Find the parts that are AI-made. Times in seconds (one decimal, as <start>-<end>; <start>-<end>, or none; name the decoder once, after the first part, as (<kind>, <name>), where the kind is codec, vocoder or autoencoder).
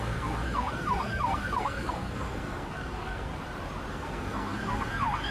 0.0-3.3 (codec, SNAC); 3.9-5.3